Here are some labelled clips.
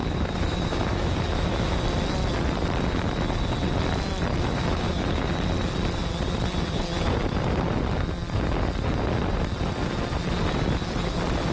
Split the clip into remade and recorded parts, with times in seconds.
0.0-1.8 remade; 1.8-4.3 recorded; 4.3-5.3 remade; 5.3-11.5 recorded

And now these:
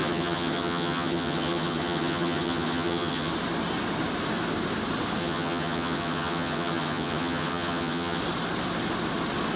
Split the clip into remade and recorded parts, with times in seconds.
0.0-3.3 remade; 3.3-5.2 recorded; 5.2-8.2 remade; 8.2-9.6 recorded

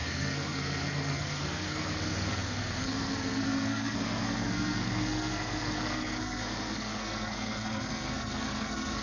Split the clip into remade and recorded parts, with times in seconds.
0.0-9.0 remade

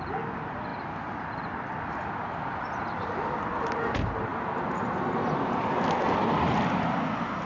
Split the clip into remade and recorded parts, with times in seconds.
0.0-0.7 recorded; 0.7-3.6 remade; 3.6-4.3 recorded; 4.3-5.1 remade; 5.1-7.5 recorded

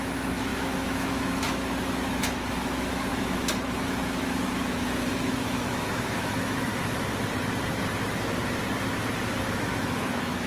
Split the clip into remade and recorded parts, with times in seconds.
0.0-6.7 remade; 6.7-9.5 recorded; 9.5-10.5 remade

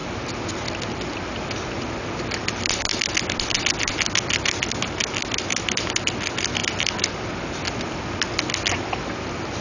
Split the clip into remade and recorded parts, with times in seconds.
0.0-6.6 recorded; 6.6-7.3 remade; 7.3-9.6 recorded